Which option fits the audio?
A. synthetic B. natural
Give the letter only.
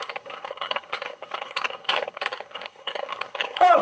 A